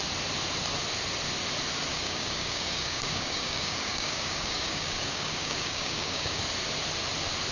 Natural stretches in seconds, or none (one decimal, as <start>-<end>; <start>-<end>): 0.0-1.9; 6.4-7.5